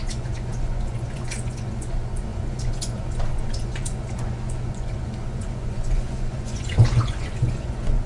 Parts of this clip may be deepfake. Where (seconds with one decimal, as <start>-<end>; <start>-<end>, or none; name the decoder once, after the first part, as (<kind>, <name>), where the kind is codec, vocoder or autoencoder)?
0.0-8.1 (vocoder, Vocos)